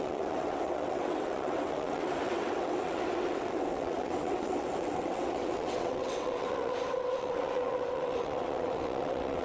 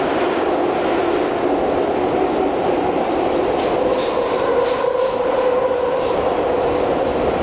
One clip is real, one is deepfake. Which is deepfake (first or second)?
first